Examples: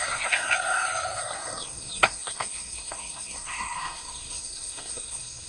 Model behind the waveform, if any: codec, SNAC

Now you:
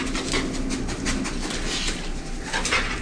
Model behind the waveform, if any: none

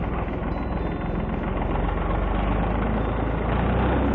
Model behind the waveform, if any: none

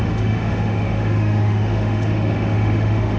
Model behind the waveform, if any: autoencoder, DAC-VAE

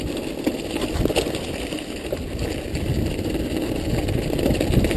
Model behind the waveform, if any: none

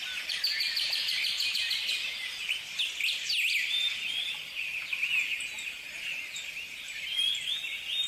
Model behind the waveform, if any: none